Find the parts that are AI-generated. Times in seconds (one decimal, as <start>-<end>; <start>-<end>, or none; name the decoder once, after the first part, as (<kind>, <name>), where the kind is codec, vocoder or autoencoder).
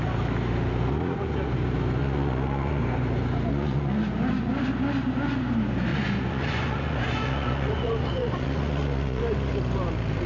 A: 2.0-2.8 (vocoder, Vocos); 3.5-4.0; 5.9-9.2